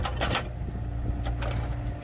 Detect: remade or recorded recorded